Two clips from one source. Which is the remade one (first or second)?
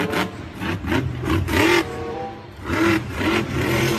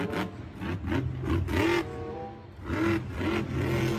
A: first